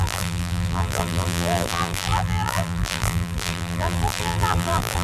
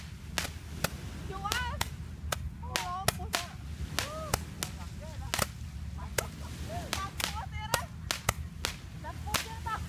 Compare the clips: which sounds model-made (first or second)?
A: first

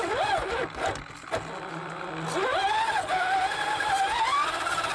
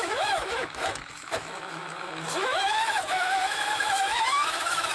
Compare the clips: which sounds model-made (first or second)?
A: second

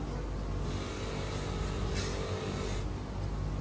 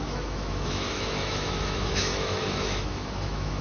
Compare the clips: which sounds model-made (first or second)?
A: second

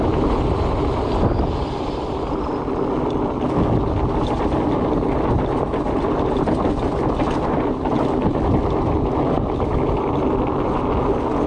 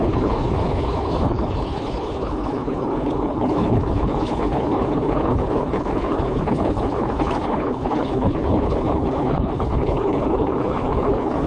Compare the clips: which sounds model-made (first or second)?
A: second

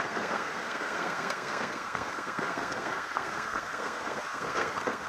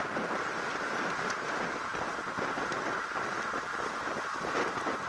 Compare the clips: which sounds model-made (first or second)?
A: first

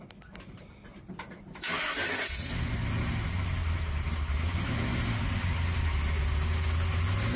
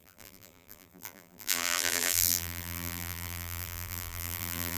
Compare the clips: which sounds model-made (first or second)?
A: second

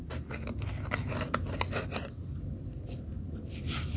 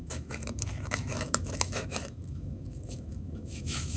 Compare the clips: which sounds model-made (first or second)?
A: second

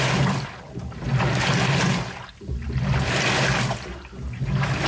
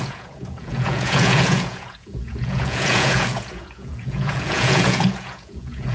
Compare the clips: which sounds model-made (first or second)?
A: second